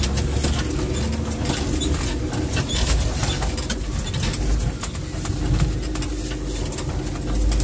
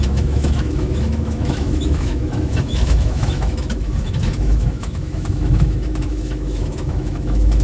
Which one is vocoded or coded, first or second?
second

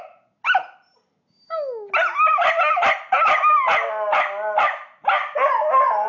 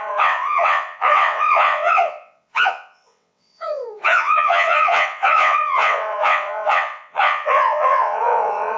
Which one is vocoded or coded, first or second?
second